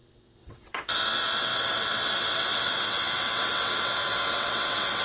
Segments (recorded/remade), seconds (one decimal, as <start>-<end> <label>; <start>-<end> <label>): 0.0-5.0 remade